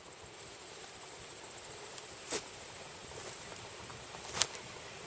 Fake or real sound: real